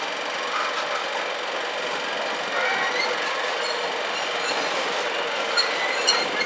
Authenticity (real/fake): real